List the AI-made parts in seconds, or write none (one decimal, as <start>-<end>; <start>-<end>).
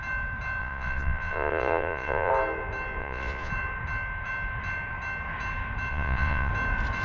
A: 0.6-2.3; 3.0-3.5; 5.9-6.5